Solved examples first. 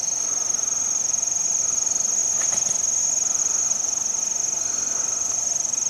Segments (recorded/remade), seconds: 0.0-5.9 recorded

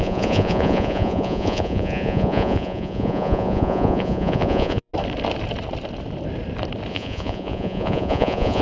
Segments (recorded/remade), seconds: 0.0-4.9 remade; 4.9-6.9 recorded; 6.9-8.6 remade

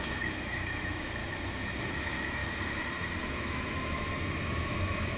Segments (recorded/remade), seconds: 0.0-1.2 remade; 1.2-1.9 recorded; 1.9-2.4 remade; 2.4-3.3 recorded; 3.3-5.2 remade

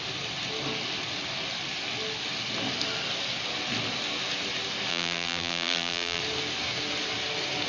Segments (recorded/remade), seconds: 0.0-4.9 recorded; 4.9-6.2 remade; 6.2-7.7 recorded

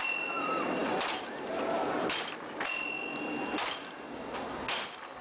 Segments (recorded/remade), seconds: 0.0-5.2 recorded

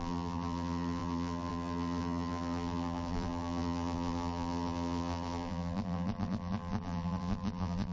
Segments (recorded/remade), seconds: 0.0-7.9 remade

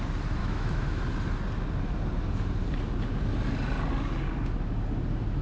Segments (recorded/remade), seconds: 0.0-0.4 recorded; 0.4-1.0 remade; 1.0-5.4 recorded

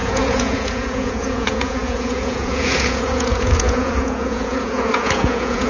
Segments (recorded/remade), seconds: 0.0-5.7 remade